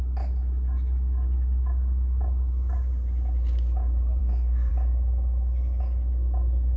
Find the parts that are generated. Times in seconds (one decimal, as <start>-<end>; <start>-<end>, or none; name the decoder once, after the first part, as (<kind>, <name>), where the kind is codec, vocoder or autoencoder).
4.2-4.7 (codec, SNAC)

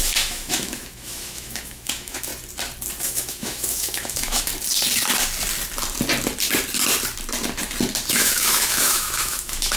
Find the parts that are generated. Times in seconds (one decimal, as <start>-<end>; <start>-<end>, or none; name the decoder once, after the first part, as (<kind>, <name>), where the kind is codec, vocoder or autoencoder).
0.0-2.3 (autoencoder, DAC-VAE); 3.0-4.5; 8.1-9.8

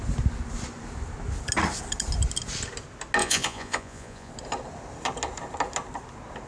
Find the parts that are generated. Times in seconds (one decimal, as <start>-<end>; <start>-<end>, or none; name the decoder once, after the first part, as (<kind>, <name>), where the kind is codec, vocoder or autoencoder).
3.2-4.3 (vocoder, Vocos)

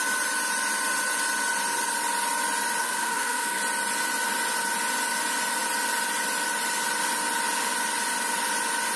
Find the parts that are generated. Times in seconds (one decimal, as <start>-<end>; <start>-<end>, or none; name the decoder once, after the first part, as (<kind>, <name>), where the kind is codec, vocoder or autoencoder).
2.8-3.6 (codec, SNAC)

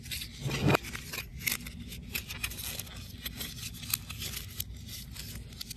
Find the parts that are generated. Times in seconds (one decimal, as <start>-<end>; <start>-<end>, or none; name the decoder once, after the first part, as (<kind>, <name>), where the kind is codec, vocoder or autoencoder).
none

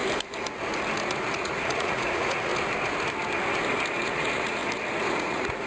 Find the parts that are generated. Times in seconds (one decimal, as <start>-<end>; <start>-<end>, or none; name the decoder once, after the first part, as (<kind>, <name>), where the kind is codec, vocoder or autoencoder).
1.2-2.5 (vocoder, Vocos); 3.9-4.6; 5.1-5.7